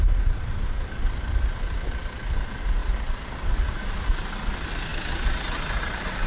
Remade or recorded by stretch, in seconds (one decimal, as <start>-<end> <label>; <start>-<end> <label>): 0.0-6.3 recorded